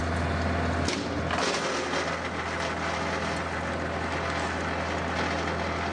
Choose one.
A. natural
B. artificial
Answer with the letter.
A